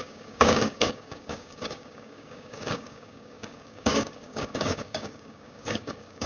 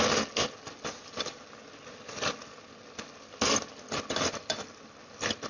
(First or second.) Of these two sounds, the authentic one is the second